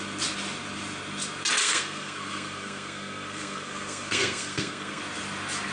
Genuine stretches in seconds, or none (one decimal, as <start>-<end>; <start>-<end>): 0.0-1.6; 5.0-5.7